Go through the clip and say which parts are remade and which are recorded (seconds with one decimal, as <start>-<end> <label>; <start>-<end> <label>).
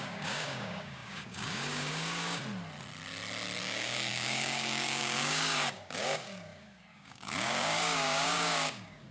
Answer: 0.0-2.4 remade; 2.4-3.6 recorded; 3.6-9.1 remade